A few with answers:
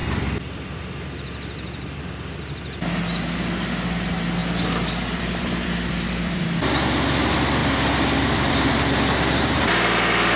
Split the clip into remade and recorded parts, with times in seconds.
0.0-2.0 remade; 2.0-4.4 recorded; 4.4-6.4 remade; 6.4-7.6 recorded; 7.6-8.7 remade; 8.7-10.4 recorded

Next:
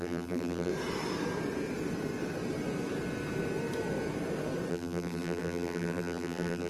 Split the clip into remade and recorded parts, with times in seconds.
0.0-0.7 remade; 0.7-4.7 recorded; 4.7-6.7 remade

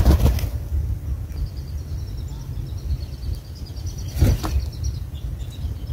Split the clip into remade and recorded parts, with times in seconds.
0.0-5.9 recorded

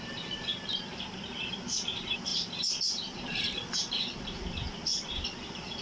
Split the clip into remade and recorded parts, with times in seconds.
0.0-0.5 remade; 0.5-1.5 recorded; 1.5-5.8 remade

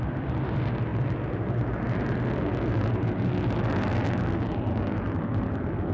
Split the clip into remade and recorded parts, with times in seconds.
0.0-0.9 remade; 0.9-4.4 recorded; 4.4-5.9 remade